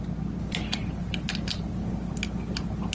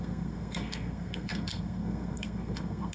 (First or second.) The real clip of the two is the first